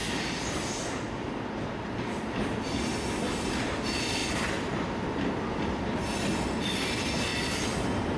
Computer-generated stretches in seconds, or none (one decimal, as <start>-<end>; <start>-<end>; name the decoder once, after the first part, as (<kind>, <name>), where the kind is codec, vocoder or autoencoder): 0.0-1.7 (vocoder, BigVGAN v2); 4.2-5.8